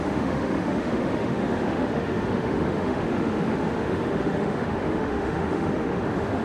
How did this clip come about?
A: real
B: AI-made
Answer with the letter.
B